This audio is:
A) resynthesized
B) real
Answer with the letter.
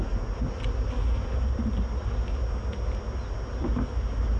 B